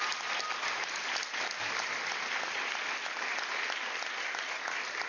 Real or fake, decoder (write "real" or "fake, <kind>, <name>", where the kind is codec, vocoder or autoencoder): real